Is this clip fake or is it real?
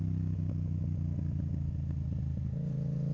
real